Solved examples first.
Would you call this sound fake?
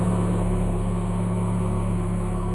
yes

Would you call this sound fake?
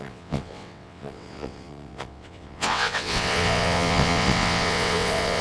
yes